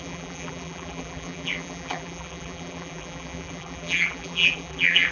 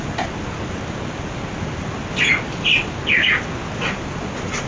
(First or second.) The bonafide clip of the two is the second